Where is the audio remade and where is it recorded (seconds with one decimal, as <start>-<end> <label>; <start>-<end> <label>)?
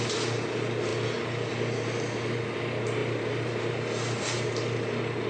0.0-5.3 recorded